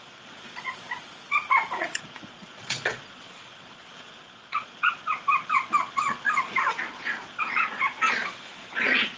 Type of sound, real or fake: fake